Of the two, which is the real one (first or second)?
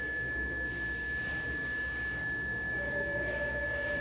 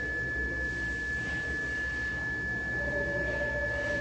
second